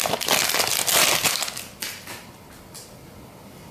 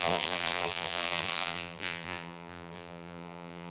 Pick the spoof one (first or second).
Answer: second